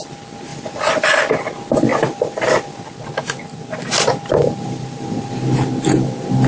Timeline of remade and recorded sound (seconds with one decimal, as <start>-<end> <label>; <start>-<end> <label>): 0.0-0.5 recorded; 0.5-1.1 remade; 1.1-1.9 recorded; 1.9-2.8 remade; 2.8-4.4 recorded; 4.4-5.4 remade; 5.4-6.5 recorded